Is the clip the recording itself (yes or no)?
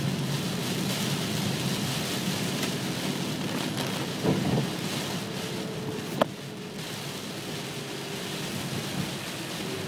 yes